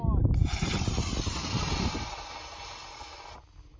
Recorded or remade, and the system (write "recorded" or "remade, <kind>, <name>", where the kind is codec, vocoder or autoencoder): recorded